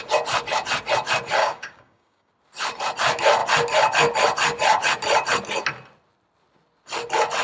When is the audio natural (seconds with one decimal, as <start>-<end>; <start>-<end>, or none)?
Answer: 0.0-1.4; 2.3-7.4